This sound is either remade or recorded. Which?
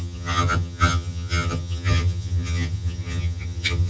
remade